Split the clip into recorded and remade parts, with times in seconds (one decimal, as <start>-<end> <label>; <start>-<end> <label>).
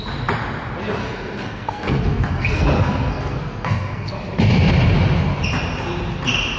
0.0-1.0 recorded; 1.0-4.2 remade; 4.2-6.6 recorded